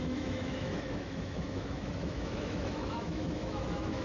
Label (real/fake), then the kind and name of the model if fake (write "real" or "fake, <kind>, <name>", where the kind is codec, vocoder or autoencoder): fake, autoencoder, DAC-VAE